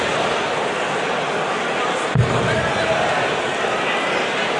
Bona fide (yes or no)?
yes